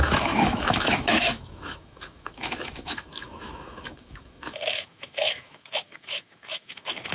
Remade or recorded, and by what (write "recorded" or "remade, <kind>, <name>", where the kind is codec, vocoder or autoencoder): remade, autoencoder, DAC-VAE